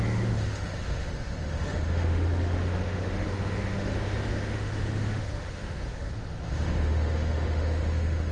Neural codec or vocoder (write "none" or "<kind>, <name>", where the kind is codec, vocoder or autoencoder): autoencoder, DAC-VAE